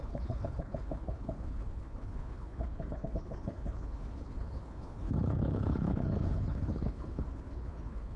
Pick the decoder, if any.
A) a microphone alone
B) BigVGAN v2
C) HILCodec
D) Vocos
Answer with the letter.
C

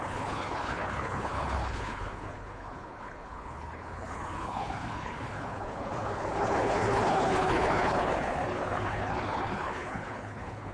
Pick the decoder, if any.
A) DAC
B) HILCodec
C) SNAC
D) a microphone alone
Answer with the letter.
B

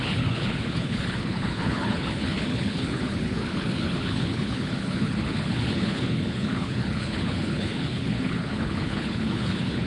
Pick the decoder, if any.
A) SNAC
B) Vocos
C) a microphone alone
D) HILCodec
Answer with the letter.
D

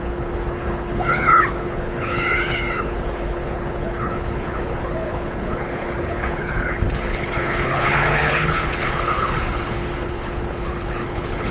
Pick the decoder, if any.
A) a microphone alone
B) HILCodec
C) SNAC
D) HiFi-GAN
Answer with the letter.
B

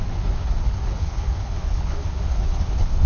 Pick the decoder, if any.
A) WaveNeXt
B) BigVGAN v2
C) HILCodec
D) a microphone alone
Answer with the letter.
C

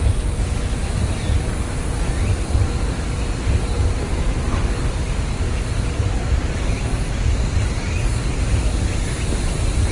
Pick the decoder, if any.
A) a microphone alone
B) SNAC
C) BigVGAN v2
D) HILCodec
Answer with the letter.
A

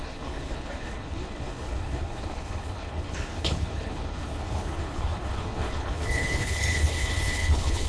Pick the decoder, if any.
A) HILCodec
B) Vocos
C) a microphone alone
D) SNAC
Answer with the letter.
A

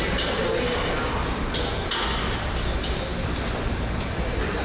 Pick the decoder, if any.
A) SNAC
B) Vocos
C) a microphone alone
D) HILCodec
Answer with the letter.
C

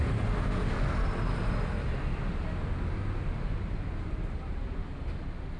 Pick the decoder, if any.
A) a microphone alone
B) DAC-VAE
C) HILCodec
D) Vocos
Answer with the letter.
A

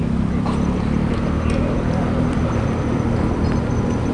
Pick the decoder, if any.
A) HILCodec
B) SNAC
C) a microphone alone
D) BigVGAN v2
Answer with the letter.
C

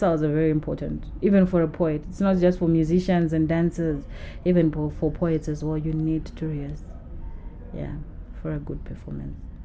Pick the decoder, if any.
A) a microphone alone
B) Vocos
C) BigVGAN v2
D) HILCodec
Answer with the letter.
A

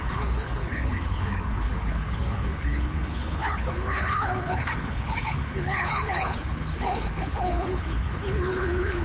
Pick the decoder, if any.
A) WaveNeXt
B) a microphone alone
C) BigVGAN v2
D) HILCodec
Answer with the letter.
D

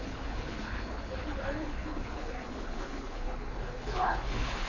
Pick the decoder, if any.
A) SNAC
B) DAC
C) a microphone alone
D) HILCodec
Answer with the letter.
D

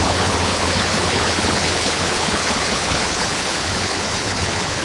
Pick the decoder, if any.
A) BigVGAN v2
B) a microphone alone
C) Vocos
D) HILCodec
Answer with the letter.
D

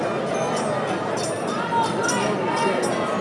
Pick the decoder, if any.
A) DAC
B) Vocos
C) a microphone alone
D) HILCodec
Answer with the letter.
C